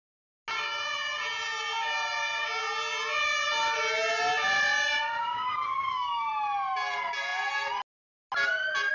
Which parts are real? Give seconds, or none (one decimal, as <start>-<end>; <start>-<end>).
0.0-5.2; 6.3-8.9